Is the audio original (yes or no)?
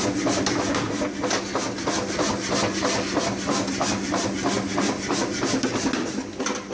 yes